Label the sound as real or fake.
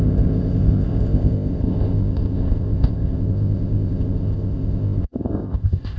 fake